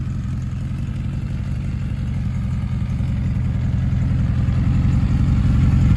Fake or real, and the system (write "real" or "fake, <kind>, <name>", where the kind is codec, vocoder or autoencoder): real